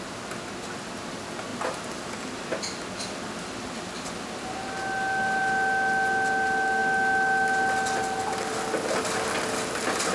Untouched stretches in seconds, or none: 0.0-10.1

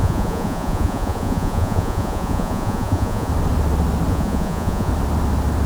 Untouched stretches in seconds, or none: 3.3-4.1; 4.9-5.7